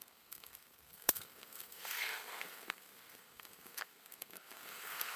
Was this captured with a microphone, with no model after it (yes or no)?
no